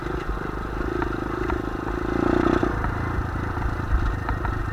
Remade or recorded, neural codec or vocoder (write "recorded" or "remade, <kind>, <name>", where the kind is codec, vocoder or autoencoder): recorded